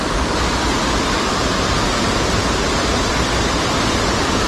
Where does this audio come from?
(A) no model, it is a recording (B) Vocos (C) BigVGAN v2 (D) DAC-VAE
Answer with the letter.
A